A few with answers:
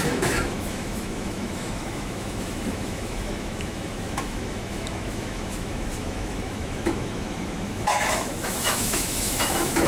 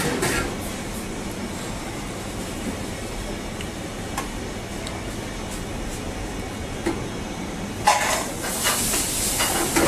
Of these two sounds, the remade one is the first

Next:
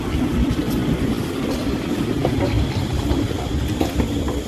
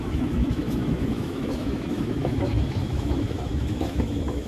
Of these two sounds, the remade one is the second